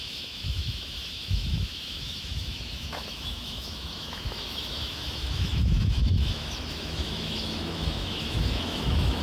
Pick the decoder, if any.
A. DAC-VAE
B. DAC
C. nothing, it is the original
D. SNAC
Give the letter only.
A